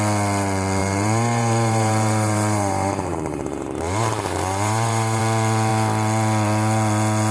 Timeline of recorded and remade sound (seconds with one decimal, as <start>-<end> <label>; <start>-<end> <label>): 0.0-0.8 recorded; 0.8-5.2 remade; 5.2-7.3 recorded

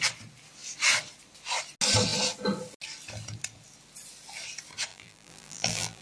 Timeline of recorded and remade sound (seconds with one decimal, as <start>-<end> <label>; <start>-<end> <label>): 0.0-4.9 recorded; 4.9-6.0 remade

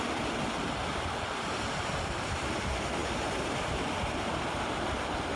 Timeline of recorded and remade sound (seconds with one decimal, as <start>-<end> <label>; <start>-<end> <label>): 0.0-3.0 remade; 3.0-3.6 recorded; 3.6-5.4 remade